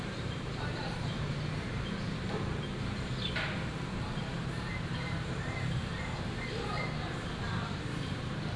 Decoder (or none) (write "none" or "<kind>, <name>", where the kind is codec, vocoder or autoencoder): vocoder, BigVGAN v2